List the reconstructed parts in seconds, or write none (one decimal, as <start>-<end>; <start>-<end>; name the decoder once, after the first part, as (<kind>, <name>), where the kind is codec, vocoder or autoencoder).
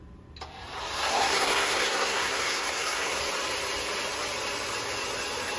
0.8-3.2 (codec, SNAC)